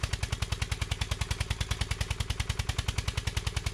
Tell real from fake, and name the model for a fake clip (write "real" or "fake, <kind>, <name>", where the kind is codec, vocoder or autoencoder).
real